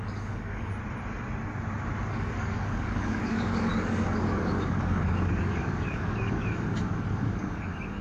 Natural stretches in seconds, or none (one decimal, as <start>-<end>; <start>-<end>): 0.7-2.1